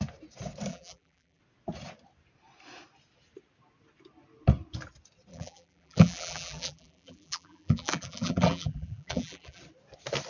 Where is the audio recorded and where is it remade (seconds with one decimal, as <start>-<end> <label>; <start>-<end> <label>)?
0.0-0.7 recorded; 0.7-1.4 remade; 1.4-5.3 recorded; 5.3-9.6 remade; 9.6-10.3 recorded